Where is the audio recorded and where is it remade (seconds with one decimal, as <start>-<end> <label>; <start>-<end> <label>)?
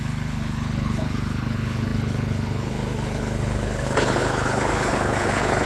0.0-5.7 remade